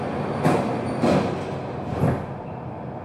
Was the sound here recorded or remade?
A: recorded